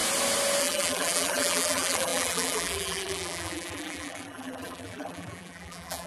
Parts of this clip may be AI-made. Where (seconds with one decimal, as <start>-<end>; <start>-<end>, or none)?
0.6-6.1